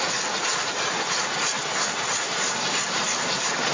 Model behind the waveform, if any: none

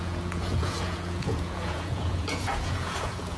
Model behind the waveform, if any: vocoder, Vocos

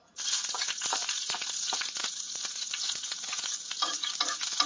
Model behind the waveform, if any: vocoder, Vocos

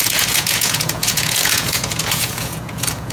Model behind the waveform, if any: vocoder, Vocos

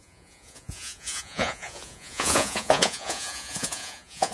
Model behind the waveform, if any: vocoder, Vocos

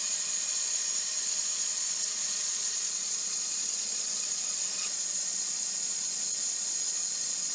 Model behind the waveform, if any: vocoder, Vocos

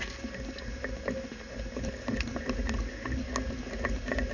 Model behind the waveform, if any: none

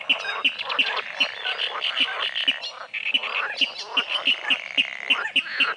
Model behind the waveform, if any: none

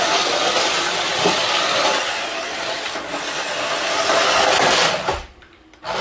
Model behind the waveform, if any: none